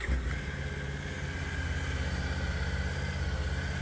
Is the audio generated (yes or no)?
no